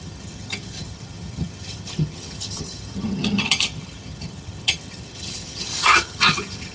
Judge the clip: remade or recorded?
remade